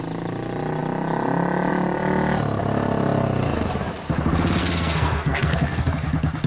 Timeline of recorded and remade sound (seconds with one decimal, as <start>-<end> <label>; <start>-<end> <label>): 0.0-4.6 recorded; 4.6-5.9 remade; 5.9-6.5 recorded